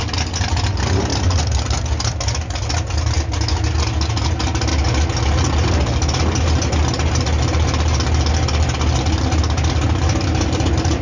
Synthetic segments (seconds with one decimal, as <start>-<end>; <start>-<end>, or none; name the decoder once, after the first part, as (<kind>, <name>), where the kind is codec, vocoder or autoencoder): none